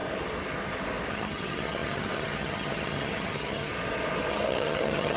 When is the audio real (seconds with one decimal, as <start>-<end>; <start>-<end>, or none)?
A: 0.0-1.1; 3.7-4.3